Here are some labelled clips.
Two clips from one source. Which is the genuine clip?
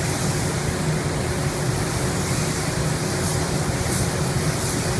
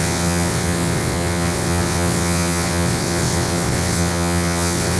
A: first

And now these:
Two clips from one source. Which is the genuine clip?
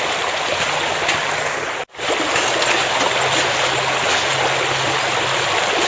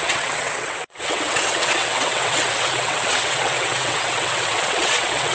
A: first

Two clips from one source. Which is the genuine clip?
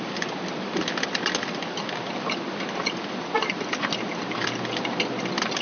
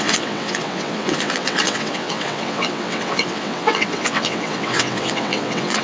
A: first